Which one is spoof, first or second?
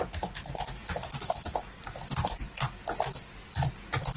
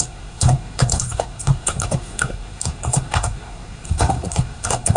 second